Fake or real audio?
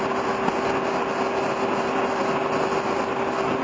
real